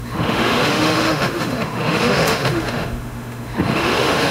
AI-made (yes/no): yes